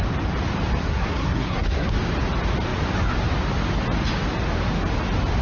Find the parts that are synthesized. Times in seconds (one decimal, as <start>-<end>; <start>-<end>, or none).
0.8-1.9